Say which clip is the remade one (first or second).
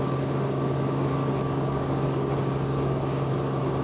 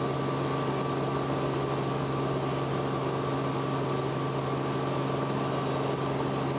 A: first